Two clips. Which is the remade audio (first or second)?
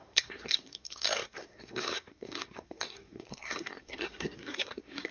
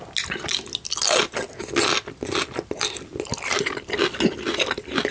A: first